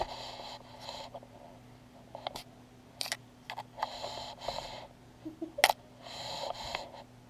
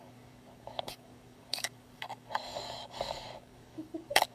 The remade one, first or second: second